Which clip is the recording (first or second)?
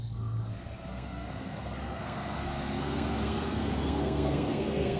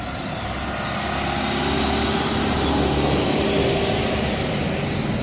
second